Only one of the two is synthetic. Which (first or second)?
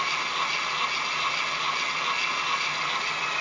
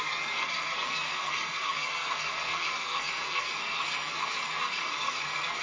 second